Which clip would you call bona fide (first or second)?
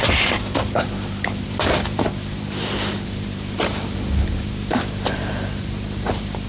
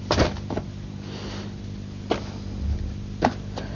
second